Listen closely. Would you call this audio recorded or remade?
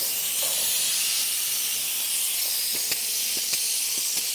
recorded